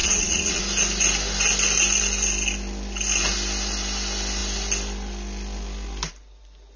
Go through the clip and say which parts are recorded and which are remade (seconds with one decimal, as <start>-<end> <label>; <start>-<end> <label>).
0.0-0.6 remade; 0.6-6.8 recorded